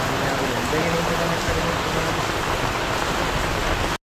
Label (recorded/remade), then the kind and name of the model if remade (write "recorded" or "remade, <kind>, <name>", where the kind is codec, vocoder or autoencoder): recorded